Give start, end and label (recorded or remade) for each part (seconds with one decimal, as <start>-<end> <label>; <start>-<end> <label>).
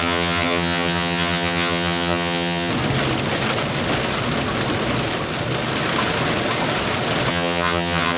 0.0-2.7 remade; 2.7-7.3 recorded; 7.3-8.2 remade